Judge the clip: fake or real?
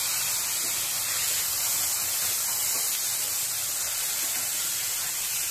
real